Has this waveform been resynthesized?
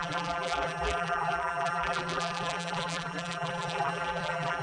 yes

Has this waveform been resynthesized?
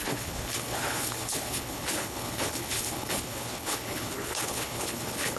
yes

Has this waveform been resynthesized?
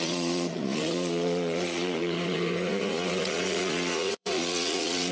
yes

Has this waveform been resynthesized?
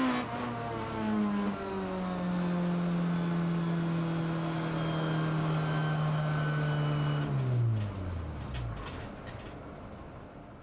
no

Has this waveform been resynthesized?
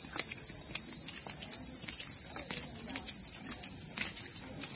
no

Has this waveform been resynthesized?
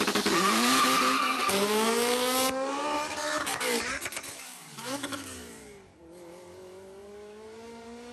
yes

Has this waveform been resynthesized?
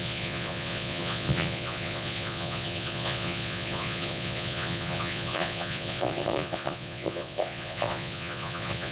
yes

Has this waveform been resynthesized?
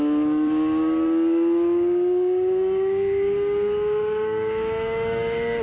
yes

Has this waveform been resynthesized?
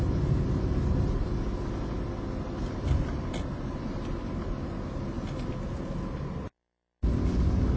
no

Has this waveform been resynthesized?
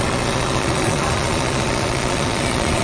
yes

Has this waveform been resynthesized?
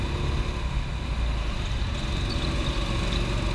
no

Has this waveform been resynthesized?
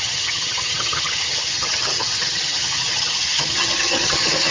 yes